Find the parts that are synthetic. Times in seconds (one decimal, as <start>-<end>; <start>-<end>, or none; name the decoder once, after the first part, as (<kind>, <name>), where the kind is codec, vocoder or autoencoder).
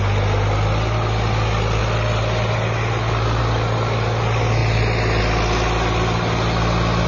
none